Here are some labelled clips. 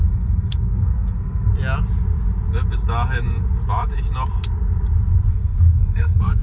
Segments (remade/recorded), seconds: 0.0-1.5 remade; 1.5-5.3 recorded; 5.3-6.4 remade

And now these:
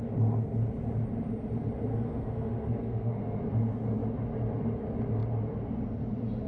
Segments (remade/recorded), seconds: 0.0-1.9 recorded; 1.9-3.4 remade; 3.4-6.5 recorded